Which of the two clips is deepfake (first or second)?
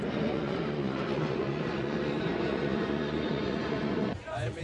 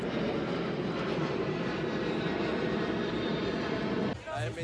first